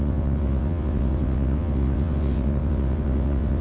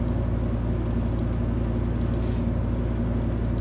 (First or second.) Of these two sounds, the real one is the second